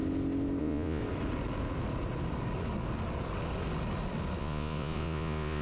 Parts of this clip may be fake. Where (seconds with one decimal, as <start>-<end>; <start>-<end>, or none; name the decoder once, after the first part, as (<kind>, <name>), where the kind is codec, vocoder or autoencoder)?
0.6-1.0 (vocoder, Vocos); 4.4-5.6